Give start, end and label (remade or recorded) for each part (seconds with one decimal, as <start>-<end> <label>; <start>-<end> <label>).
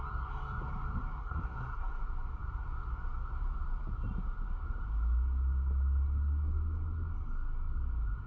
0.0-1.2 recorded; 1.2-2.0 remade; 2.0-8.3 recorded